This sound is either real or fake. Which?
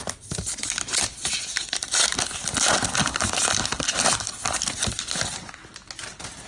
real